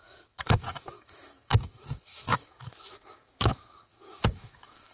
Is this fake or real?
fake